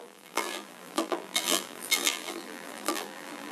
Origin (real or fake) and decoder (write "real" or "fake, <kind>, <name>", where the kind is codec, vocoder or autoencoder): fake, vocoder, BigVGAN v2